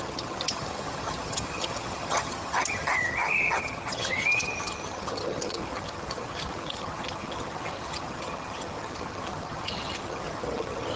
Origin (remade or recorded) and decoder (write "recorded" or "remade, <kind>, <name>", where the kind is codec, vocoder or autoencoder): remade, vocoder, HiFi-GAN